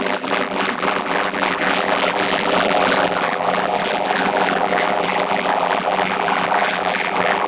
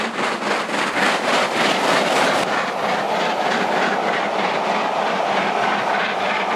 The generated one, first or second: first